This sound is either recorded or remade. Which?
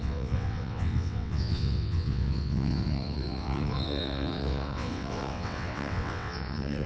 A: remade